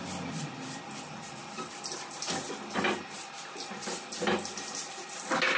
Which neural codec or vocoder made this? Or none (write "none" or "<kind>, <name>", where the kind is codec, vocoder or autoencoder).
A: none